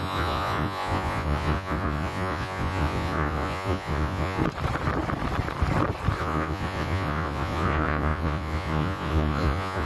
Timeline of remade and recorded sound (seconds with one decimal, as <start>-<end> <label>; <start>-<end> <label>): 0.0-4.4 remade; 4.4-6.2 recorded; 6.2-9.9 remade